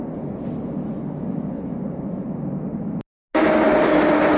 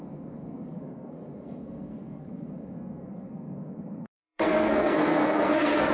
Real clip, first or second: first